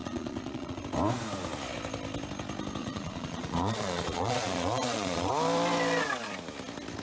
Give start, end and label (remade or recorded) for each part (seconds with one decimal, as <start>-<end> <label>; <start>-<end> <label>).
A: 0.0-0.8 remade; 0.8-2.8 recorded; 2.8-5.3 remade; 5.3-7.0 recorded